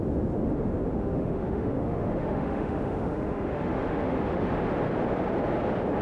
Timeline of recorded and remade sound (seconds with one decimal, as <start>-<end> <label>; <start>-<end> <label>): 0.0-0.9 recorded; 0.9-4.5 remade; 4.5-6.0 recorded